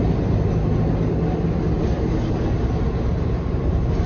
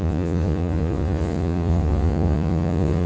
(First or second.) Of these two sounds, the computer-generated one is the second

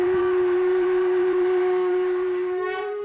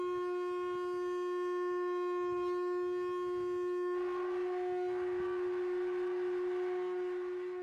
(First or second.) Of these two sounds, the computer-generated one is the first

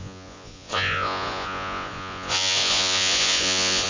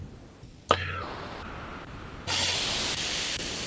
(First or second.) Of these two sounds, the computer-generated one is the first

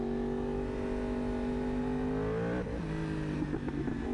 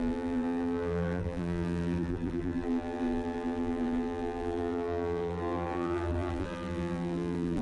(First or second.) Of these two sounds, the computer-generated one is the second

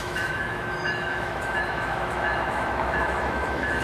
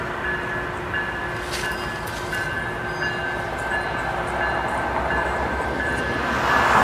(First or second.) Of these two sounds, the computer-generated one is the first